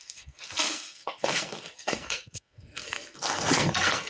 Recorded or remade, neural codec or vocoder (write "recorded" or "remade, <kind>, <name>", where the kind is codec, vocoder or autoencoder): remade, codec, SNAC